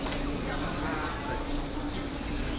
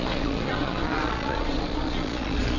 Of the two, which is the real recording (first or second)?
first